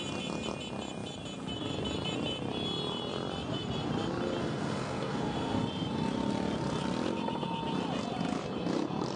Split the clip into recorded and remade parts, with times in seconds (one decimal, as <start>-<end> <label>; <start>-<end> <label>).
0.0-4.4 recorded; 4.4-5.6 remade; 5.6-9.2 recorded